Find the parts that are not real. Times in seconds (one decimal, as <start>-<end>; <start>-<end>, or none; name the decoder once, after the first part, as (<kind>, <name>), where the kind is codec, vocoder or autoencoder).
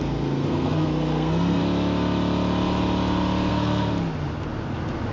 0.0-1.6 (codec, SNAC); 3.5-3.9